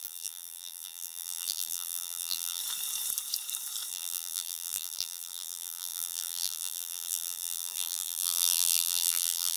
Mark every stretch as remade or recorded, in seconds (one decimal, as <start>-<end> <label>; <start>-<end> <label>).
0.0-2.6 remade; 2.6-3.9 recorded; 3.9-9.6 remade